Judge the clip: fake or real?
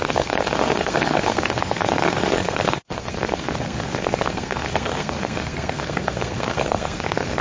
fake